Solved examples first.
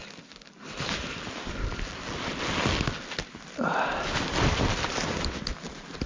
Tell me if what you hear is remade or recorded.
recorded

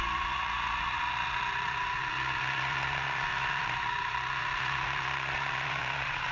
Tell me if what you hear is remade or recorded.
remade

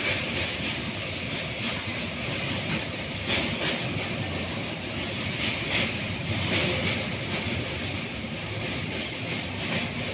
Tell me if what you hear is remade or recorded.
recorded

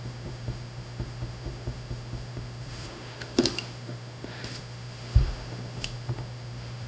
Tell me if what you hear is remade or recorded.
remade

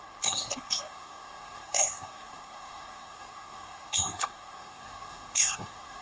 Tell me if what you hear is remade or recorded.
remade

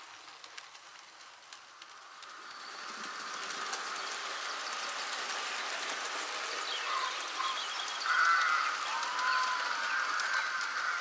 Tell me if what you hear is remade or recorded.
recorded